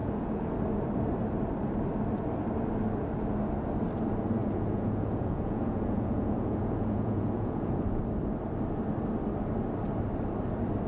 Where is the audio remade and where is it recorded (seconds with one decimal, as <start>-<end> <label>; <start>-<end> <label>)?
0.0-0.5 remade; 0.5-4.4 recorded; 4.4-8.0 remade; 8.0-10.9 recorded